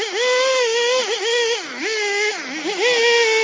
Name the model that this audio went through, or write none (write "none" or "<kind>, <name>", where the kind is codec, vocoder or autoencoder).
none